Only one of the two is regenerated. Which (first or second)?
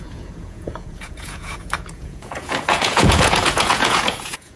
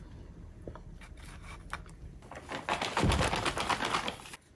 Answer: first